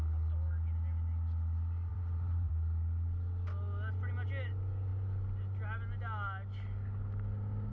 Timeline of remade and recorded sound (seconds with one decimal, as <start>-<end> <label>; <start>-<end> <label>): 0.0-1.9 recorded; 1.9-2.5 remade; 2.5-7.7 recorded

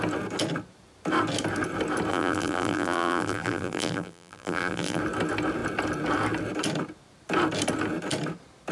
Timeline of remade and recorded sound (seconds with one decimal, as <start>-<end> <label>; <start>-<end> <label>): 0.0-2.1 recorded; 2.1-5.0 remade; 5.0-8.7 recorded

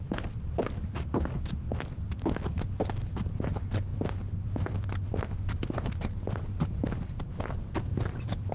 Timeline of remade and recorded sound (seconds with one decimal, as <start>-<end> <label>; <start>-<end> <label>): 0.0-3.9 recorded; 3.9-7.4 remade; 7.4-8.5 recorded

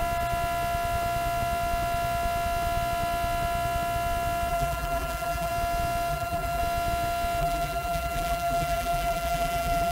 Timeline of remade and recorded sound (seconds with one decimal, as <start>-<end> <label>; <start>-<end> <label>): 0.0-4.5 recorded; 4.5-5.5 remade; 5.5-6.1 recorded; 6.1-6.6 remade; 6.6-7.4 recorded; 7.4-9.9 remade

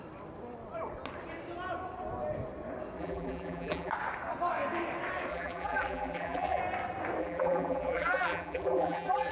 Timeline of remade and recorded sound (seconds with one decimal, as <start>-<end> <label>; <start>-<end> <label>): 0.0-3.0 recorded; 3.0-3.9 remade; 3.9-5.3 recorded; 5.3-6.6 remade; 6.6-7.2 recorded; 7.2-9.3 remade

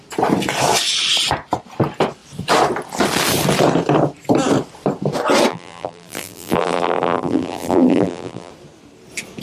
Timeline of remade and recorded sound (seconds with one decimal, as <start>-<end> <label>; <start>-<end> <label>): 0.0-5.5 recorded; 5.5-8.5 remade; 8.5-9.4 recorded

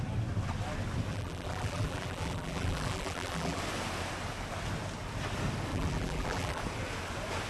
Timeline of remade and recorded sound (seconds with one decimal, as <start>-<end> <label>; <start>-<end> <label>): 0.0-1.1 recorded; 1.1-3.6 remade; 3.6-5.7 recorded; 5.7-6.6 remade; 6.6-7.5 recorded